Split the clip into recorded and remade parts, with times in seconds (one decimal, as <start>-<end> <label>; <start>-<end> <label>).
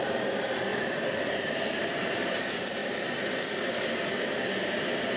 0.0-0.7 remade; 0.7-1.3 recorded; 1.3-2.8 remade; 2.8-4.7 recorded; 4.7-5.2 remade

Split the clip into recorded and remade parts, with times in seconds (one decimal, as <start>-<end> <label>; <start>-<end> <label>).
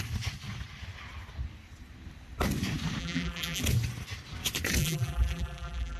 0.0-3.0 recorded; 3.0-3.6 remade; 3.6-4.8 recorded; 4.8-6.0 remade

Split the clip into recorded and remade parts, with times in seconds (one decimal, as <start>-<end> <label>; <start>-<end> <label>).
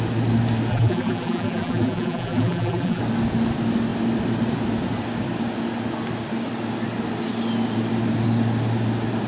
0.0-0.7 recorded; 0.7-3.0 remade; 3.0-9.3 recorded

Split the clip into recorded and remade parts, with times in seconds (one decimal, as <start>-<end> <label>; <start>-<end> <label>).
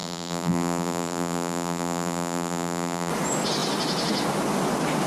0.0-3.1 remade; 3.1-5.1 recorded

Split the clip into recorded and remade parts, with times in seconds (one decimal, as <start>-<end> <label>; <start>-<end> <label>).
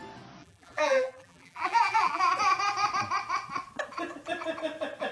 0.0-0.4 recorded; 0.4-2.2 remade; 2.2-5.1 recorded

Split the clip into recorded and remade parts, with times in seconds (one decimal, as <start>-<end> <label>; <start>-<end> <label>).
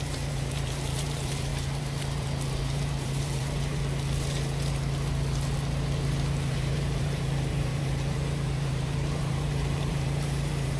0.0-3.8 remade; 3.8-6.5 recorded; 6.5-10.8 remade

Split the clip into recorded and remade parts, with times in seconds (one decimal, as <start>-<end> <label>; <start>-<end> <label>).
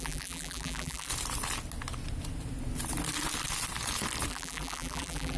0.0-1.1 remade; 1.1-4.3 recorded; 4.3-5.4 remade